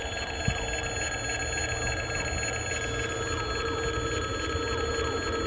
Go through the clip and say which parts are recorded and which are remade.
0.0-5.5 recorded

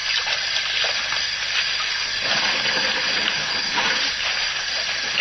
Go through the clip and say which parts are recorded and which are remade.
0.0-3.1 remade; 3.1-5.2 recorded

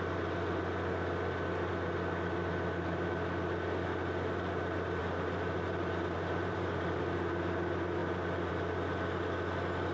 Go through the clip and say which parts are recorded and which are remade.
0.0-5.0 recorded; 5.0-7.0 remade; 7.0-9.9 recorded

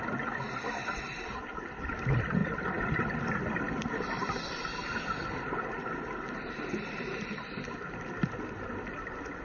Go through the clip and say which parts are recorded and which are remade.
0.0-9.4 recorded